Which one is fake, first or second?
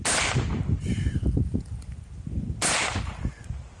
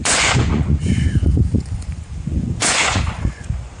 second